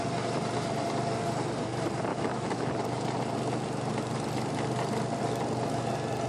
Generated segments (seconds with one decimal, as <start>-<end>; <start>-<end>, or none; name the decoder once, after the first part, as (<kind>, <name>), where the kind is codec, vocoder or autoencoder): 2.1-2.7 (autoencoder, DAC-VAE)